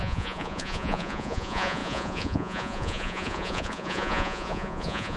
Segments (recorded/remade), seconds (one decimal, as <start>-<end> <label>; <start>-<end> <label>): 0.0-5.2 remade